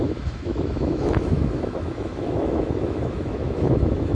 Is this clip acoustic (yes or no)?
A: no